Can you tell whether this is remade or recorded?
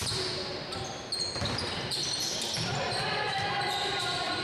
remade